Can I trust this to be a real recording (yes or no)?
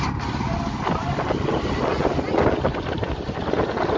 yes